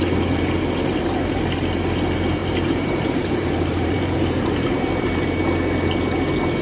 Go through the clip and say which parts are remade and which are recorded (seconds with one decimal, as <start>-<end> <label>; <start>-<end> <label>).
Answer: 0.0-2.4 recorded; 2.4-5.1 remade; 5.1-6.6 recorded